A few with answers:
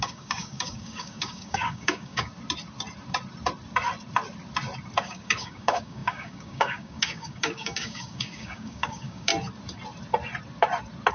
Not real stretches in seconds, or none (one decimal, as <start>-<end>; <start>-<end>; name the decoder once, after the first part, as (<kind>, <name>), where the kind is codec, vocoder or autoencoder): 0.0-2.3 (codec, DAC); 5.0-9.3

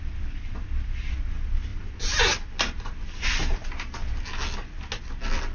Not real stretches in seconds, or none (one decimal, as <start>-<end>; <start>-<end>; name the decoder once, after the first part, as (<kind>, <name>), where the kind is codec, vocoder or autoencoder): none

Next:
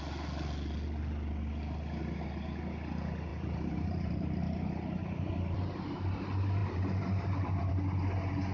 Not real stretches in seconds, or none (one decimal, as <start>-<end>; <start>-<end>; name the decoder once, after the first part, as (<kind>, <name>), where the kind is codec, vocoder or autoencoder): 3.3-5.3 (vocoder, BigVGAN v2); 6.6-7.7